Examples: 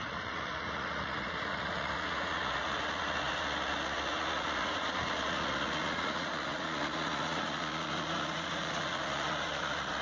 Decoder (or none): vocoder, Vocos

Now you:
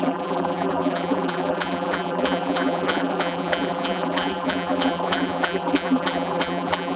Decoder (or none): vocoder, BigVGAN v2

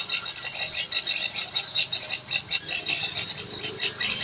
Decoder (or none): none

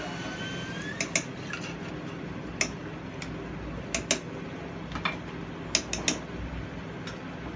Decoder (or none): none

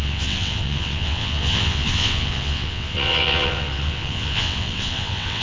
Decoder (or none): vocoder, WaveNeXt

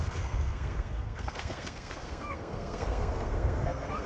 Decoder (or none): codec, SNAC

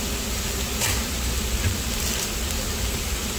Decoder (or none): none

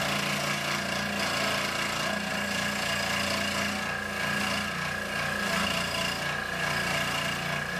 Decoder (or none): none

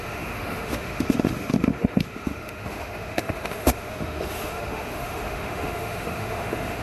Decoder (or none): autoencoder, DAC-VAE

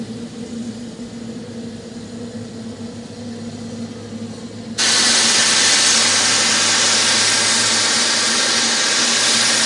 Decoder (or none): none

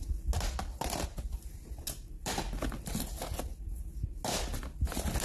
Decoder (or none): none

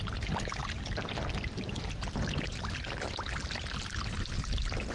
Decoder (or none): vocoder, BigVGAN v2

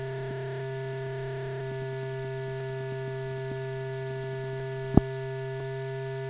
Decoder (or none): none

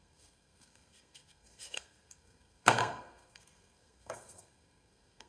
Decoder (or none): codec, SNAC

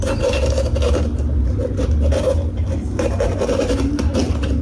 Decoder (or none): none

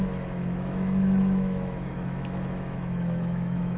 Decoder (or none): autoencoder, DAC-VAE